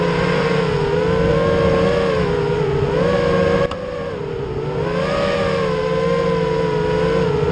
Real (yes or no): yes